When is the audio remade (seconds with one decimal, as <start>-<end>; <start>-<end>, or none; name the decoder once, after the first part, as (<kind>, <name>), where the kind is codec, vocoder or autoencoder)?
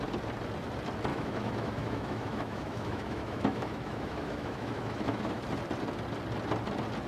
1.1-5.4 (autoencoder, DAC-VAE)